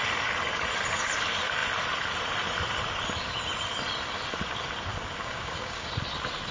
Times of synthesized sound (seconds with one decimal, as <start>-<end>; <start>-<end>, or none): 4.9-5.9